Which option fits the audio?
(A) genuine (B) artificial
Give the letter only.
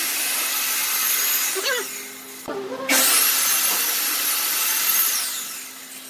A